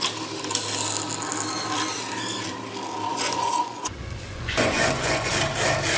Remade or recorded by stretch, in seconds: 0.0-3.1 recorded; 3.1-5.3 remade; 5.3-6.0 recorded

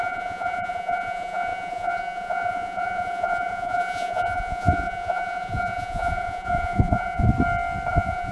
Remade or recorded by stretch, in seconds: 0.0-7.3 remade; 7.3-7.9 recorded; 7.9-8.3 remade

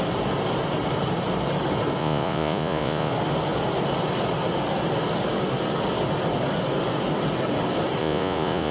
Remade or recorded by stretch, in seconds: 0.0-2.0 recorded; 2.0-3.1 remade; 3.1-8.0 recorded; 8.0-8.7 remade

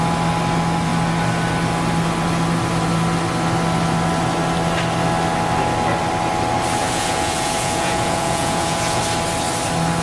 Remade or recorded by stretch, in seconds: 0.0-6.8 recorded; 6.8-9.0 remade; 9.0-10.0 recorded

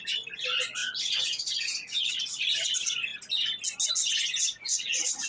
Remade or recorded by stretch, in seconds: 0.0-0.8 recorded; 0.8-2.1 remade; 2.1-4.7 recorded; 4.7-5.3 remade

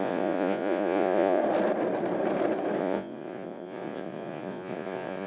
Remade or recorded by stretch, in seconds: 0.0-1.4 remade; 1.4-2.8 recorded; 2.8-5.3 remade